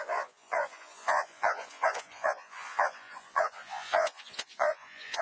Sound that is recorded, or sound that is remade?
remade